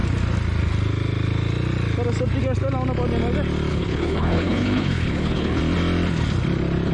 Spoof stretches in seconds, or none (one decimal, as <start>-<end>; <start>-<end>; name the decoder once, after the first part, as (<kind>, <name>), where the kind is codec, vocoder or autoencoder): 3.7-5.6 (codec, HILCodec)